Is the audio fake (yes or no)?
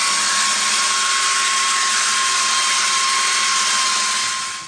no